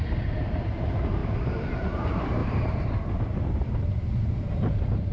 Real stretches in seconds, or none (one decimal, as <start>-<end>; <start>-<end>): 2.4-3.4